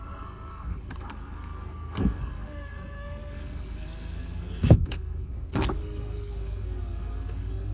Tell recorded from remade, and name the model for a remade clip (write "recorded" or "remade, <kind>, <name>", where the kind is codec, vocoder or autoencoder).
remade, codec, SNAC